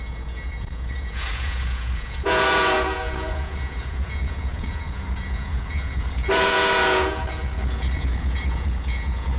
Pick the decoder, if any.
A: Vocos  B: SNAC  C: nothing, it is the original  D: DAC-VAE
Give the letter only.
A